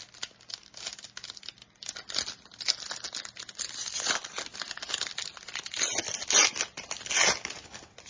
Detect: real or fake real